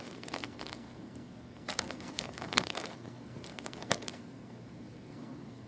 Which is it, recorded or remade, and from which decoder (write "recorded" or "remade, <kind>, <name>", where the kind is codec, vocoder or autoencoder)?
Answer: remade, codec, SNAC